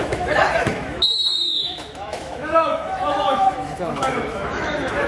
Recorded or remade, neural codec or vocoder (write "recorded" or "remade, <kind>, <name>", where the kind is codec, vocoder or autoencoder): remade, autoencoder, DAC-VAE